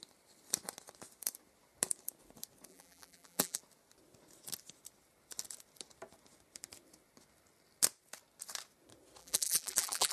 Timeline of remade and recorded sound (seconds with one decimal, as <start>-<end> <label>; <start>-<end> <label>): 0.0-2.7 recorded; 2.7-3.6 remade; 3.6-9.2 recorded; 9.2-10.1 remade